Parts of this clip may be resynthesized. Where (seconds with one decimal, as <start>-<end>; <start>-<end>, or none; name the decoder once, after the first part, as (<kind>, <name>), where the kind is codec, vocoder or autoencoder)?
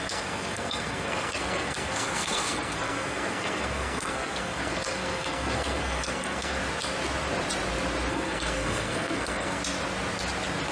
0.0-6.6 (codec, SNAC); 8.1-9.6